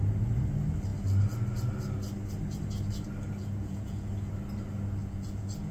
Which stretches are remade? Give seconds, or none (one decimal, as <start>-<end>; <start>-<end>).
3.4-4.1; 5.0-5.7